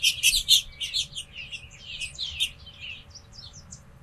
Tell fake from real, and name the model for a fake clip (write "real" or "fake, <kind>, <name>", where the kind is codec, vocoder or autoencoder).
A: real